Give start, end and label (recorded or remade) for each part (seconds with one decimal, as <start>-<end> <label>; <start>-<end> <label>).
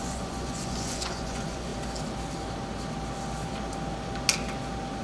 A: 0.0-1.7 remade; 1.7-5.0 recorded